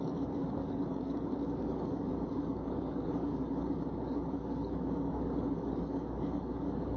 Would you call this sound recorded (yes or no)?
no